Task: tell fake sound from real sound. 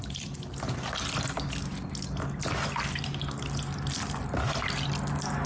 real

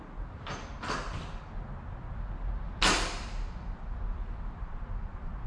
real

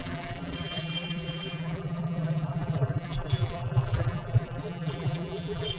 fake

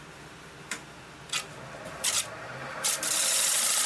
real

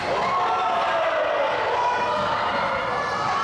fake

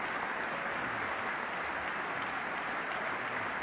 real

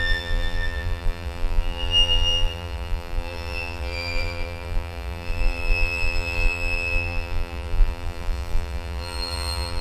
fake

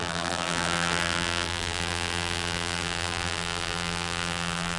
fake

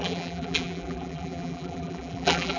fake